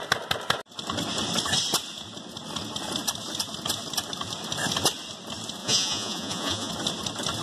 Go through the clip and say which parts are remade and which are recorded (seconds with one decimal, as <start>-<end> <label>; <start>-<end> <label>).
0.0-5.6 recorded; 5.6-6.7 remade; 6.7-7.4 recorded